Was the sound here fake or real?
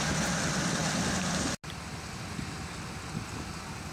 real